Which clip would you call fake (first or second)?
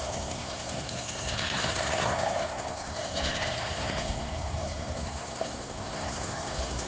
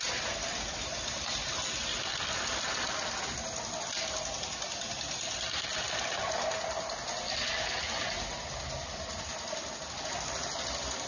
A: first